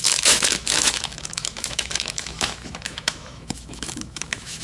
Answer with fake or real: fake